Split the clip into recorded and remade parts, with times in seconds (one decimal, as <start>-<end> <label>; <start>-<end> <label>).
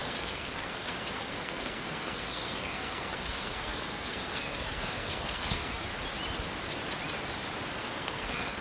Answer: 0.0-5.9 remade; 5.9-7.7 recorded; 7.7-8.6 remade